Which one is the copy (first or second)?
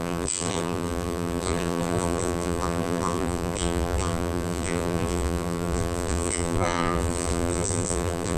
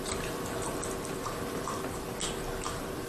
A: first